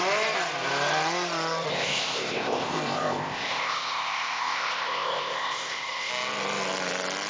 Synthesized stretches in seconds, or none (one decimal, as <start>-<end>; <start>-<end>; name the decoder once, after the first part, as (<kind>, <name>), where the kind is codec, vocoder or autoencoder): 1.7-6.1 (codec, ZipCodec)